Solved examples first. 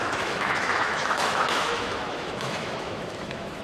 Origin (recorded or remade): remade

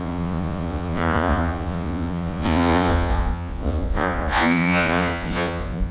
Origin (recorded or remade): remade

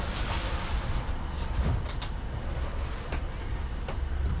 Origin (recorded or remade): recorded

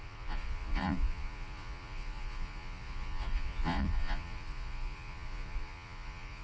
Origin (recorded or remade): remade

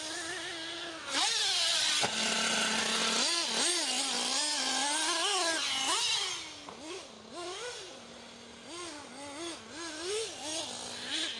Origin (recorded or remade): recorded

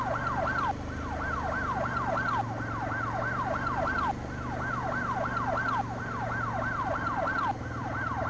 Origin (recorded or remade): recorded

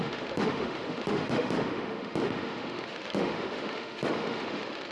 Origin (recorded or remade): remade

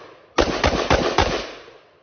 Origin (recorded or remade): recorded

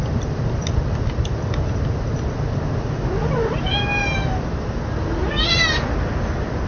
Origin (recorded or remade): recorded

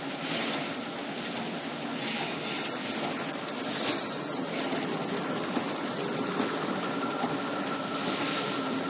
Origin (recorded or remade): recorded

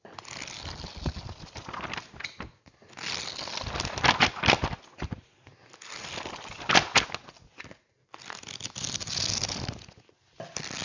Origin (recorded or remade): recorded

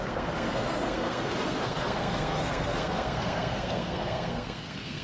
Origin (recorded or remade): remade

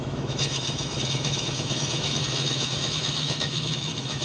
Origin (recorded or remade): remade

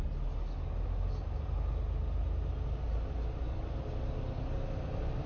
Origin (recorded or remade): recorded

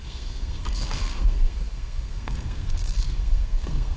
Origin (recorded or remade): remade